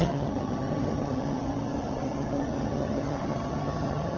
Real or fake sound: fake